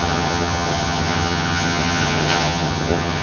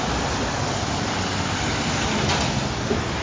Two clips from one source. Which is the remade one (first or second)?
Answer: first